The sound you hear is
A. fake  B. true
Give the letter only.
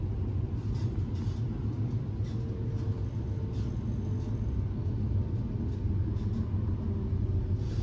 B